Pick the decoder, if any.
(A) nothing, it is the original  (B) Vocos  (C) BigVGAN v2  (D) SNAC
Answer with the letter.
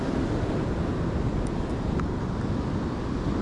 A